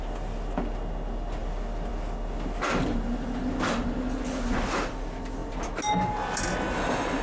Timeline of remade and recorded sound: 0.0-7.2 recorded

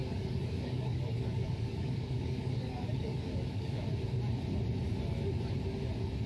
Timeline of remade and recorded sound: 0.0-3.8 remade; 3.8-6.3 recorded

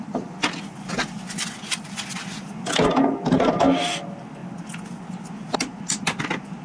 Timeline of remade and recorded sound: 0.0-6.6 recorded

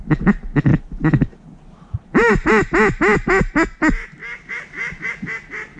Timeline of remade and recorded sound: 0.0-0.7 recorded; 0.7-2.5 remade; 2.5-4.2 recorded; 4.2-5.1 remade; 5.1-5.8 recorded

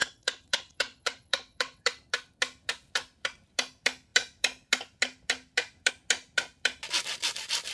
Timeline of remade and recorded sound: 0.0-1.8 remade; 1.8-7.7 recorded